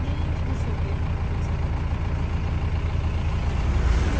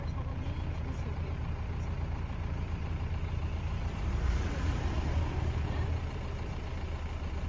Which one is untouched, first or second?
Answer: first